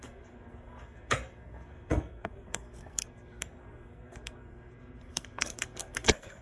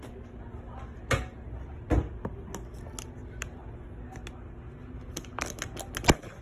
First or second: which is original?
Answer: second